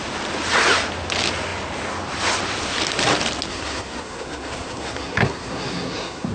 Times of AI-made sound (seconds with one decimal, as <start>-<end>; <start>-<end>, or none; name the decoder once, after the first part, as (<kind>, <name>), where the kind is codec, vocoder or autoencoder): 3.5-6.3 (codec, SNAC)